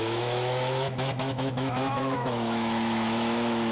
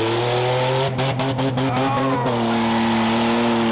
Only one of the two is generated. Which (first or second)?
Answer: first